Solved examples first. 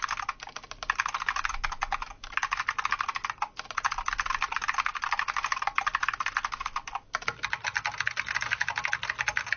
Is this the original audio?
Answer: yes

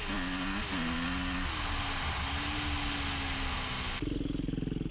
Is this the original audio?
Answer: yes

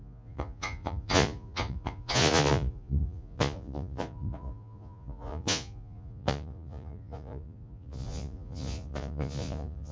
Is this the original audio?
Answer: no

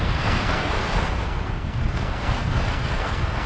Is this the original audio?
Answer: no